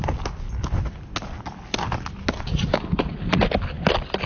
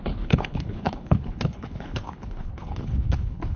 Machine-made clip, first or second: second